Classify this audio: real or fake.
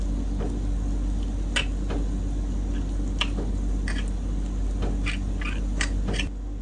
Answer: real